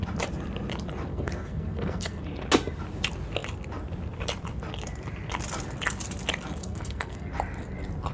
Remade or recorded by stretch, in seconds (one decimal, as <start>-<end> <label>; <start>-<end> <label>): 0.0-1.1 recorded; 1.1-2.2 remade; 2.2-6.6 recorded; 6.6-7.3 remade; 7.3-8.1 recorded